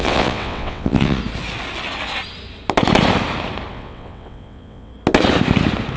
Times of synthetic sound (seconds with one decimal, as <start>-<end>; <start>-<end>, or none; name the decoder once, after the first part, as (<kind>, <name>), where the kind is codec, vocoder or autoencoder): 0.0-1.2 (vocoder, WaveNeXt); 3.7-4.9